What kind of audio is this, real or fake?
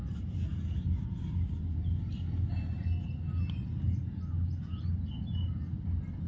real